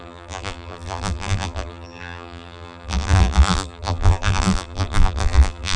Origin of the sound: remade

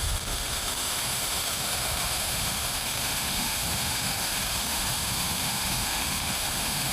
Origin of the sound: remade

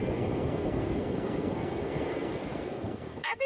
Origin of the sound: remade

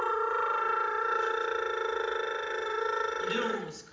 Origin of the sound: recorded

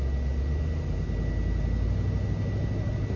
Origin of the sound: recorded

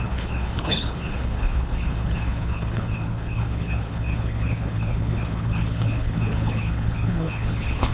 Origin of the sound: remade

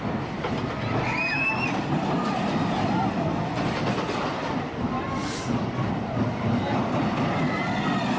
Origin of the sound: remade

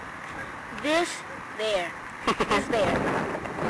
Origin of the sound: recorded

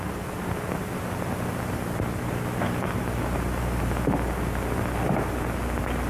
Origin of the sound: recorded